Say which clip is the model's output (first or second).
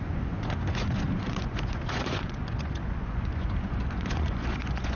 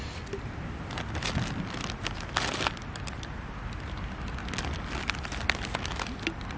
first